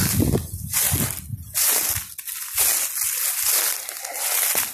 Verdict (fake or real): real